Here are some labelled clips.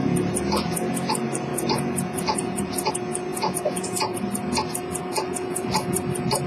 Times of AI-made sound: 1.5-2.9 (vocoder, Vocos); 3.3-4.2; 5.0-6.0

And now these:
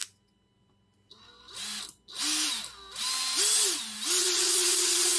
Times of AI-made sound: 4.2-5.2 (vocoder, Vocos)

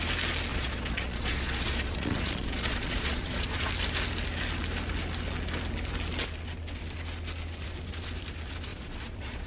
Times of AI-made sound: 0.5-3.7 (vocoder, Vocos); 8.7-9.5

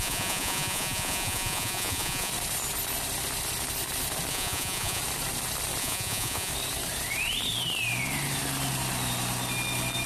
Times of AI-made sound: 0.0-2.3 (vocoder, Vocos); 4.3-5.0; 5.8-6.5

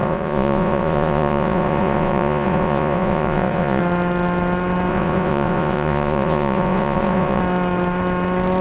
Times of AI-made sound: 0.0-3.8 (vocoder, Vocos); 4.9-7.4